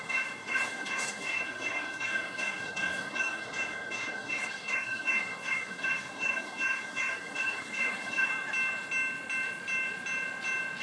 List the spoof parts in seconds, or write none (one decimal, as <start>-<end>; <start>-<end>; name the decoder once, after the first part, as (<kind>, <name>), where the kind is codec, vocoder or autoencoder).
0.0-8.3 (codec, SNAC)